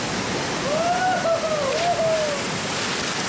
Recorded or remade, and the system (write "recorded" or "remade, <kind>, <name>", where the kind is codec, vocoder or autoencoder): recorded